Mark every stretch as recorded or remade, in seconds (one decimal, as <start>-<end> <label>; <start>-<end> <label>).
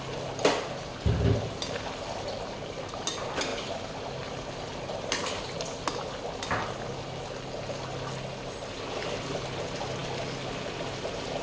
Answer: 0.0-11.4 recorded